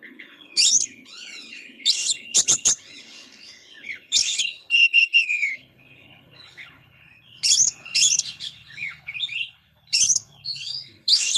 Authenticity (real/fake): fake